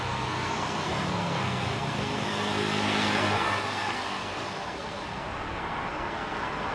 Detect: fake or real fake